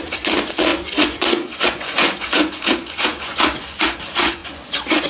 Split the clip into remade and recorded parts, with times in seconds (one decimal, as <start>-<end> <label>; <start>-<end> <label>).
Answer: 0.0-5.1 remade